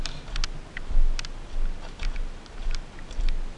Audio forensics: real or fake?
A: real